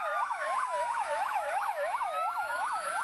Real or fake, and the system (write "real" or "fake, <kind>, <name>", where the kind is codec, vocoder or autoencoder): fake, autoencoder, DAC-VAE